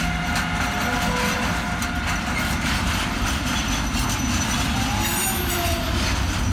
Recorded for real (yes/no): yes